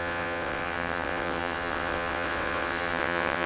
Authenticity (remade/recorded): remade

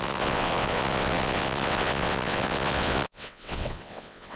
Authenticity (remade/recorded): remade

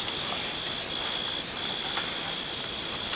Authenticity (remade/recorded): recorded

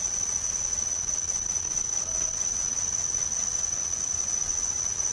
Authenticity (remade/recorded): remade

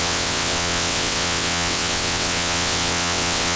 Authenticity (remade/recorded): remade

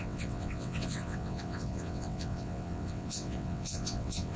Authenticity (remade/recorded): remade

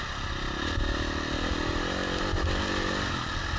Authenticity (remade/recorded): recorded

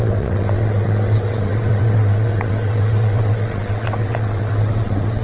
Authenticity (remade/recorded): remade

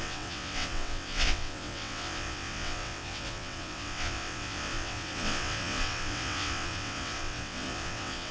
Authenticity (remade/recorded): remade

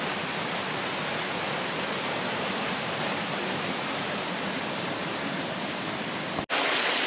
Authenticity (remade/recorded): recorded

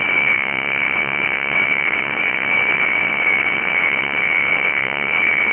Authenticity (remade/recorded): remade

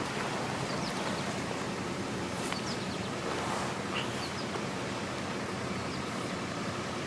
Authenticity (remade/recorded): recorded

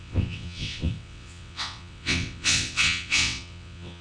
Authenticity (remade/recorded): remade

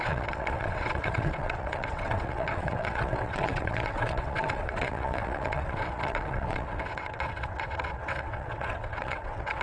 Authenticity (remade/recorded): remade